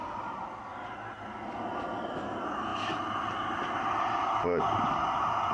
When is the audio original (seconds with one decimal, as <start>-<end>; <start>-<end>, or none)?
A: 0.0-2.7; 3.3-5.5